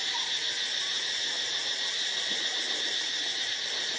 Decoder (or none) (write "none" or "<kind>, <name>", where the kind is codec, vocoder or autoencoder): vocoder, BigVGAN v2